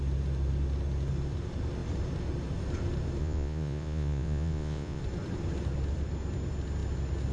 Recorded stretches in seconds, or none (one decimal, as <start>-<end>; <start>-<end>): 0.0-3.2; 5.0-7.3